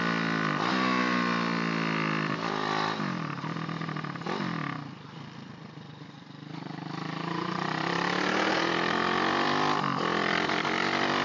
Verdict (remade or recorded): remade